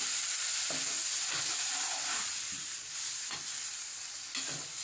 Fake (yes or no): no